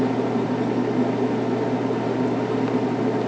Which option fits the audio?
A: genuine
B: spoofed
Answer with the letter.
A